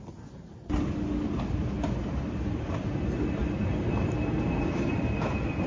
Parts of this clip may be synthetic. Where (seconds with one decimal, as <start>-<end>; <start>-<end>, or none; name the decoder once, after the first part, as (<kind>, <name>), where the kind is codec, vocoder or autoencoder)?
none